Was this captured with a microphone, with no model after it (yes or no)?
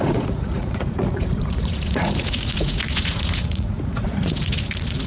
no